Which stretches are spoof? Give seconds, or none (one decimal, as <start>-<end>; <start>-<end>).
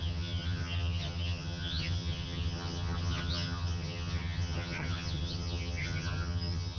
0.0-6.8